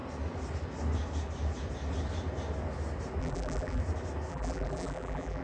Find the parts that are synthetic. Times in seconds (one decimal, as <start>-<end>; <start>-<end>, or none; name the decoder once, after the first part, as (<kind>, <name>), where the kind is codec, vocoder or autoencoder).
3.2-3.8 (vocoder, BigVGAN v2); 4.3-5.4